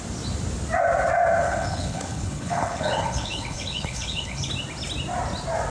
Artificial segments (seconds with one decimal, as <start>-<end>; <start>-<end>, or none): 1.4-4.5